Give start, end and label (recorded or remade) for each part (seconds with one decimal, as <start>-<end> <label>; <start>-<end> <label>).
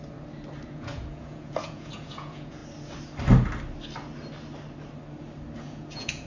0.0-0.7 recorded; 0.7-2.6 remade; 2.6-5.6 recorded; 5.6-6.3 remade